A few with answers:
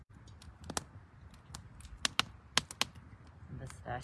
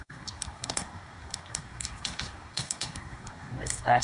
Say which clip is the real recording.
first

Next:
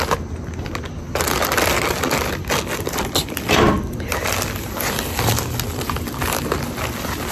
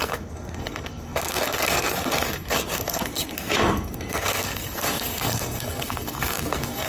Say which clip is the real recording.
first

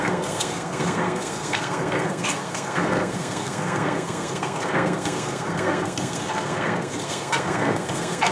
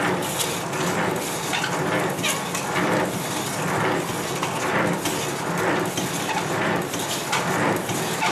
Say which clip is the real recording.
second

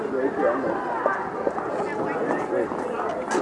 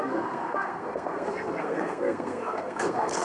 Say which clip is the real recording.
first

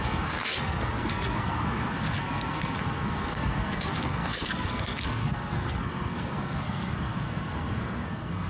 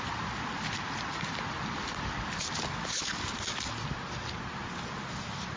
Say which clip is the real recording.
second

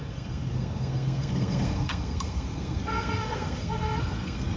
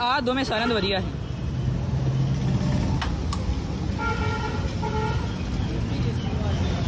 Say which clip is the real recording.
second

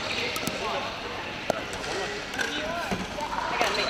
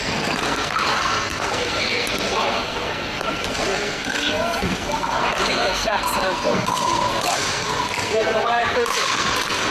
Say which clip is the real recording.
first